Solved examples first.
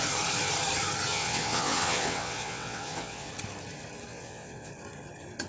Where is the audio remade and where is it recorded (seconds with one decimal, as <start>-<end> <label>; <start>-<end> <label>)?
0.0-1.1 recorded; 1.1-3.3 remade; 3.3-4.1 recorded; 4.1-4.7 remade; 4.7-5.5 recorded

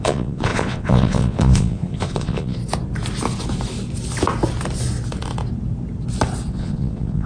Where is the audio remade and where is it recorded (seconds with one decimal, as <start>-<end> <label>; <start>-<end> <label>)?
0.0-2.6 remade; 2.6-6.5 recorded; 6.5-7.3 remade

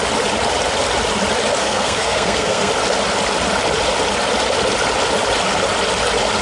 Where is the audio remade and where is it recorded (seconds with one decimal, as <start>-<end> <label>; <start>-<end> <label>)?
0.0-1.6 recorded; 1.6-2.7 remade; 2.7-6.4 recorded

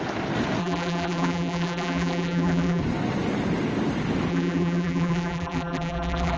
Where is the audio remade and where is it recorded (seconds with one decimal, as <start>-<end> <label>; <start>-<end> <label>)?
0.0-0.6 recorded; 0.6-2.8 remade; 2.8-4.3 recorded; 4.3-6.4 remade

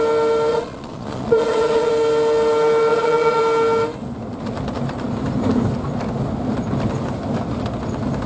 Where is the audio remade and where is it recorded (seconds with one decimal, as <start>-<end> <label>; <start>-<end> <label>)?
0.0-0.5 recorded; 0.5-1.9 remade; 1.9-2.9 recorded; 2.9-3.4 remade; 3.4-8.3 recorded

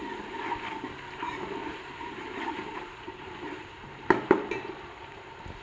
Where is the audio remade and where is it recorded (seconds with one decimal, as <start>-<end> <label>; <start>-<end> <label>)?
0.0-1.7 recorded; 1.7-5.6 remade

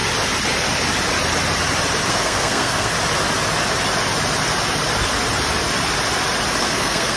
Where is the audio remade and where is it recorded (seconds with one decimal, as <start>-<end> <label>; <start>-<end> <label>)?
0.0-2.1 recorded; 2.1-2.9 remade; 2.9-6.6 recorded; 6.6-7.2 remade